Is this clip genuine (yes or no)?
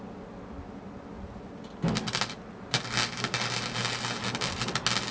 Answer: yes